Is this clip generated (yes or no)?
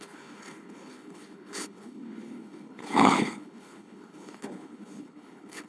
yes